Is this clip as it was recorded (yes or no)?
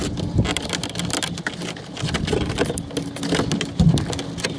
yes